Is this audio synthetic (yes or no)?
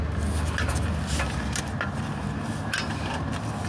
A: no